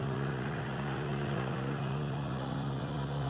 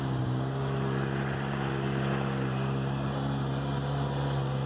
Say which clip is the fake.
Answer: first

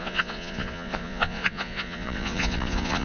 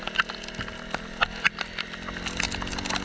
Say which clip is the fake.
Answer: first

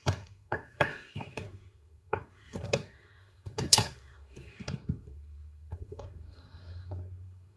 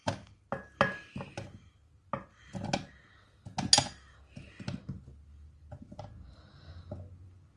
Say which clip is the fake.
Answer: first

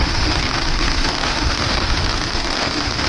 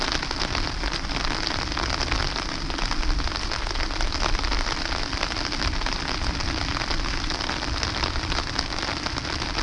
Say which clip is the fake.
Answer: first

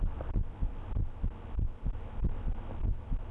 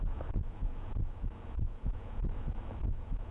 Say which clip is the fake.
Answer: second